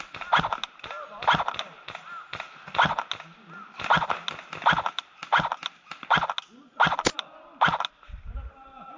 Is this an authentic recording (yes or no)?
yes